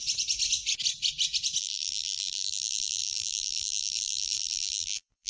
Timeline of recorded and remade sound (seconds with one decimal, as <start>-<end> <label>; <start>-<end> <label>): 0.0-1.6 recorded; 1.6-5.3 remade